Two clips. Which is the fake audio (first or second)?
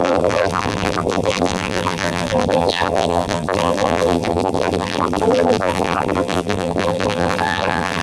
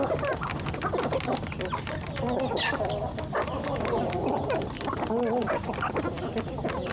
first